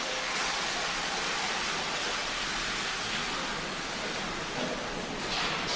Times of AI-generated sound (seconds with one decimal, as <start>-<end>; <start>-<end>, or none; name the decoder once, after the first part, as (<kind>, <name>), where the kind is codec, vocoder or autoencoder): none